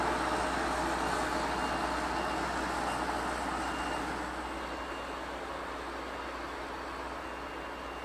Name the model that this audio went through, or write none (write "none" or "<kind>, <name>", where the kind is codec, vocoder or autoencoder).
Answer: none